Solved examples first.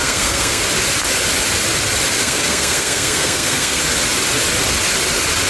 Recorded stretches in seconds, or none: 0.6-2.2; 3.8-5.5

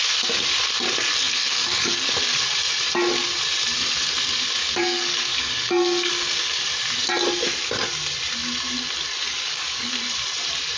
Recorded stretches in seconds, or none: 0.0-1.4; 2.1-4.6; 6.1-9.3; 9.9-10.8

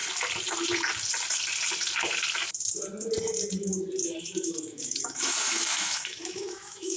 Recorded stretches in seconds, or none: 0.0-4.2

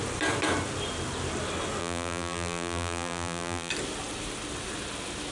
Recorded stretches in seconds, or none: 0.0-1.8; 3.7-5.3

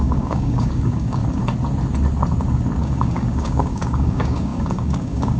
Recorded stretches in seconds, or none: 1.2-2.8